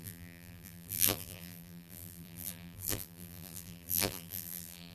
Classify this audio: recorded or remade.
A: remade